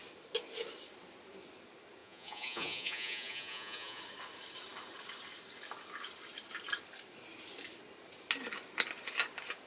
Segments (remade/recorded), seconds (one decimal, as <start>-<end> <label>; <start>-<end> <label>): 0.0-2.0 recorded; 2.0-4.0 remade; 4.0-9.7 recorded